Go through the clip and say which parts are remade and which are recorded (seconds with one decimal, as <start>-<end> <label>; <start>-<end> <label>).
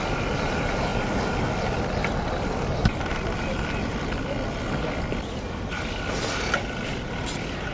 0.0-7.7 recorded